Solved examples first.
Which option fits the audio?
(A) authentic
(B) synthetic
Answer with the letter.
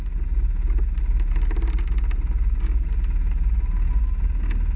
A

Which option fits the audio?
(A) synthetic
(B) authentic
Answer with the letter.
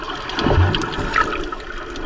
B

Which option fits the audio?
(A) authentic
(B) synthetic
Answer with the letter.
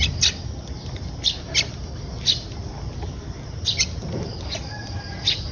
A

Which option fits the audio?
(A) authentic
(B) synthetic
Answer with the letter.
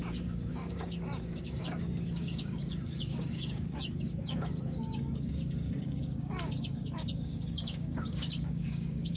B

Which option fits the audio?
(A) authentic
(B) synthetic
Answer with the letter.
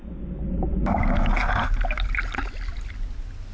A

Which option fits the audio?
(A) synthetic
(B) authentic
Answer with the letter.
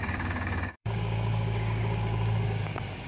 A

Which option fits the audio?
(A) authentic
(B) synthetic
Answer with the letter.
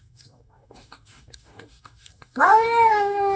B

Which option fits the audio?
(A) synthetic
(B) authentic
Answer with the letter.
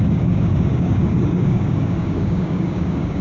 A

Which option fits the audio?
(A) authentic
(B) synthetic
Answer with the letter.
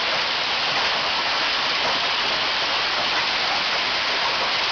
A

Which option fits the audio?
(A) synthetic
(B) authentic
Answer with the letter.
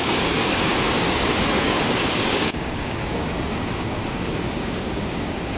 A